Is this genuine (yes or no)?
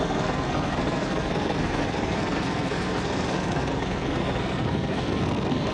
no